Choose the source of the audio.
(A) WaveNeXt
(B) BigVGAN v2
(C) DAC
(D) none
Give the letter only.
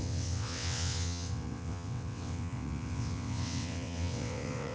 A